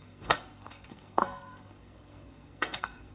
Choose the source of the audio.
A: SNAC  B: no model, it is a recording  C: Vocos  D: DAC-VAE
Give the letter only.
A